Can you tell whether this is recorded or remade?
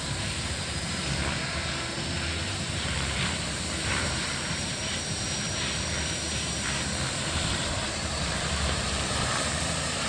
remade